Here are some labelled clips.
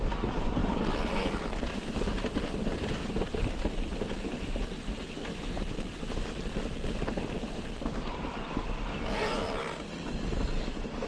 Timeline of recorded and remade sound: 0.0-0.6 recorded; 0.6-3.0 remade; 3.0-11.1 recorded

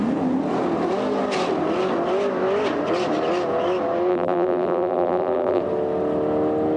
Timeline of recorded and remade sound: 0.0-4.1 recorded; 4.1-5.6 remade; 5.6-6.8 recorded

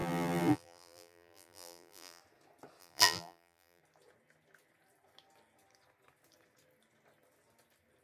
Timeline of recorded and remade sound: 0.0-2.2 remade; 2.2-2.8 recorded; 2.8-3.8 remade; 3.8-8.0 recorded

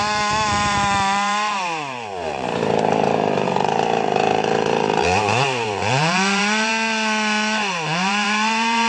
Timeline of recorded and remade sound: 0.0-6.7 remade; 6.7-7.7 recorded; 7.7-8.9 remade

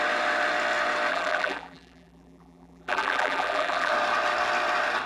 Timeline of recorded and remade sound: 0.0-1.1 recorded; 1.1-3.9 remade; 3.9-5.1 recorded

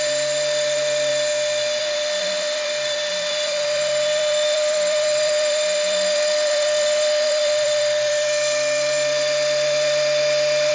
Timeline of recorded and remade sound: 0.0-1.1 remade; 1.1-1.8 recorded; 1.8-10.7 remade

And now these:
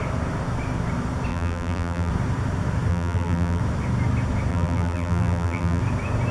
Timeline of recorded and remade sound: 0.0-1.3 recorded; 1.3-2.1 remade; 2.1-2.9 recorded; 2.9-3.6 remade; 3.6-4.5 recorded; 4.5-5.8 remade; 5.8-6.3 recorded

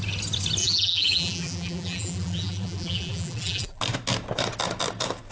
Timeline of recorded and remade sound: 0.0-0.6 recorded; 0.6-3.8 remade; 3.8-5.3 recorded